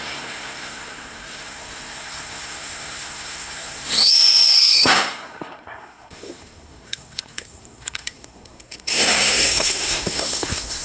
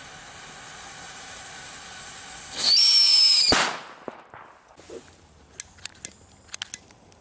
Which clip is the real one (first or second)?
second